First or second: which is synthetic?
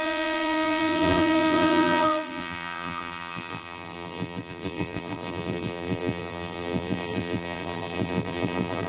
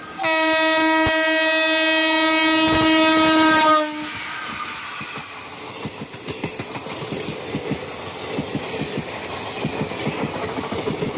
first